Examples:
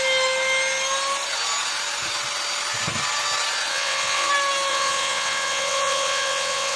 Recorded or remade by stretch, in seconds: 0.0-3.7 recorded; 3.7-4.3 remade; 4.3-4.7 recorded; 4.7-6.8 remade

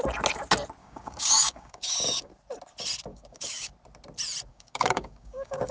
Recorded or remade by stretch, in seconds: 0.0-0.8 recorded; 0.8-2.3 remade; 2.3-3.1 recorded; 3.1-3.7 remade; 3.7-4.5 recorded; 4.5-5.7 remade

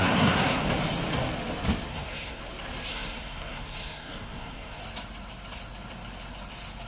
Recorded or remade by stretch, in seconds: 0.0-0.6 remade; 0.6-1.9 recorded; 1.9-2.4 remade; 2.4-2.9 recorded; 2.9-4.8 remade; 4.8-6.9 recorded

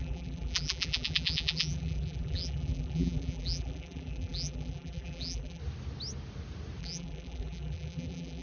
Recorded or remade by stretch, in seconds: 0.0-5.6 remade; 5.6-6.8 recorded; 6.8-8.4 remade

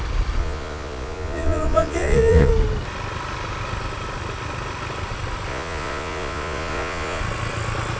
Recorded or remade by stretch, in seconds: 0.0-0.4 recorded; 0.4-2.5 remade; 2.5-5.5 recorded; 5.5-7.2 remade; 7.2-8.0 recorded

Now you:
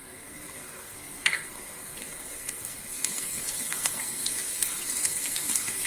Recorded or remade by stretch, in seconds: 0.0-5.9 remade

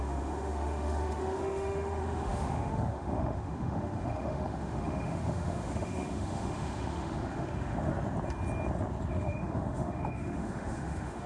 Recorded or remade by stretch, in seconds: 0.0-7.9 remade; 7.9-9.1 recorded; 9.1-11.3 remade